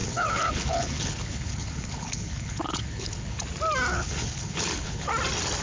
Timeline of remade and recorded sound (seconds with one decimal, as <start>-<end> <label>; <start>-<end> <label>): 0.0-3.4 remade; 3.4-3.9 recorded; 3.9-5.1 remade; 5.1-5.6 recorded